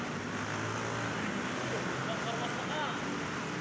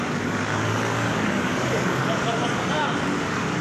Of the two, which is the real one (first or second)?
first